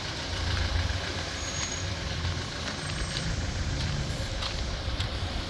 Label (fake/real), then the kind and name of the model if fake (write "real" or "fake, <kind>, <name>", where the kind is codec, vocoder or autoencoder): fake, vocoder, BigVGAN v2